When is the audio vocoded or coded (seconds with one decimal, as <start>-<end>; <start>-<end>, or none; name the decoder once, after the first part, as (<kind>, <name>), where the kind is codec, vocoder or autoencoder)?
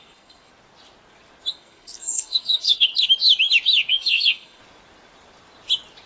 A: 0.0-0.5 (codec, SNAC); 1.5-2.9; 3.9-4.6